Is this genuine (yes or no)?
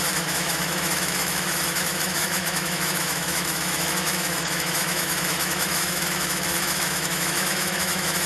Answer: no